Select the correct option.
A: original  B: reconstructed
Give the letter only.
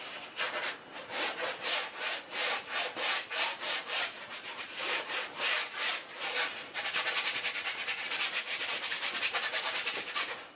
B